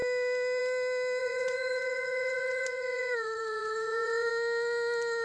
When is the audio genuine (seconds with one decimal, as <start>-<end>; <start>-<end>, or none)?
0.0-1.2; 4.3-5.2